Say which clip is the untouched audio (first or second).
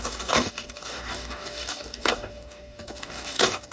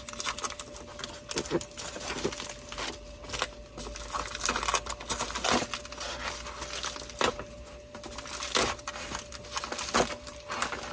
second